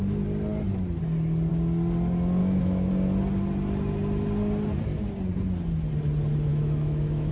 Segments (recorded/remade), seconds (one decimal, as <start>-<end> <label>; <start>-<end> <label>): 0.0-2.4 recorded; 2.4-2.9 remade; 2.9-6.5 recorded; 6.5-7.3 remade